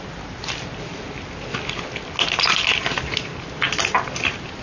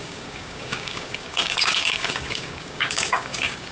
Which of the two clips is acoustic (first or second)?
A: first